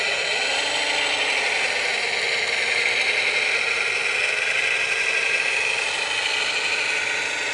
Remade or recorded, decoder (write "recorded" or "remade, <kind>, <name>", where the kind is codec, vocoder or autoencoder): recorded